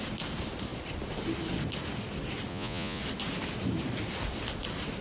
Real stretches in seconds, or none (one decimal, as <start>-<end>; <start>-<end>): 0.0-2.5; 3.0-5.0